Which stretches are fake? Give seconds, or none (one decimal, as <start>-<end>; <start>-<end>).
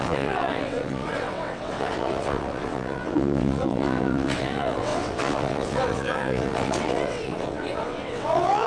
0.0-8.7